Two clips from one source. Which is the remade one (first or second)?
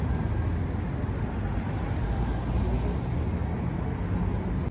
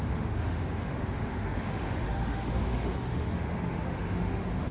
second